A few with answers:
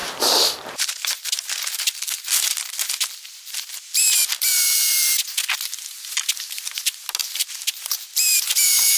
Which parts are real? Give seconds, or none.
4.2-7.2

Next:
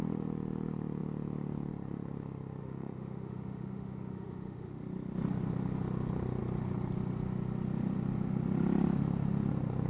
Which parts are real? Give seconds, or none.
0.0-2.6; 4.7-9.9